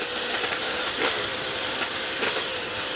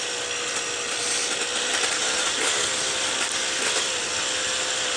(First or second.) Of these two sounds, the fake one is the first